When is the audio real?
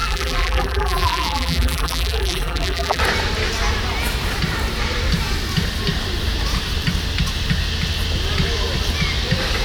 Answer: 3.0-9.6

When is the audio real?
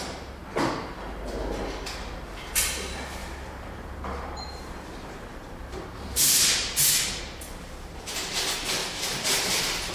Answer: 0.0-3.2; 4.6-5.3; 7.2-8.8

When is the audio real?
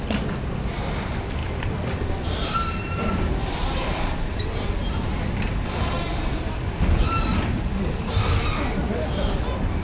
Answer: 0.0-9.8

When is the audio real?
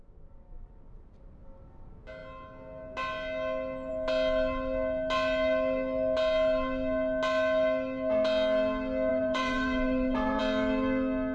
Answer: 0.0-9.1; 10.4-11.3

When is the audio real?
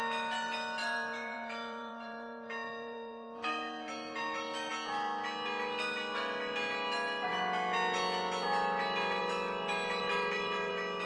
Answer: 0.0-0.8; 4.7-10.0; 10.7-11.1